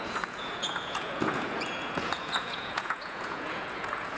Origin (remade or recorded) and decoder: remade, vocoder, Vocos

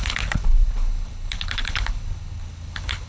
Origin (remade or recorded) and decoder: remade, codec, HILCodec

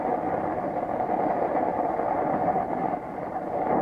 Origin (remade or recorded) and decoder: remade, vocoder, BigVGAN v2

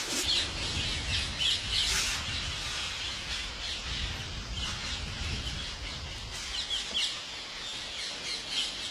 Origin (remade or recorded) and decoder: recorded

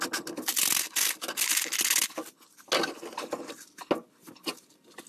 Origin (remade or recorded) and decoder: recorded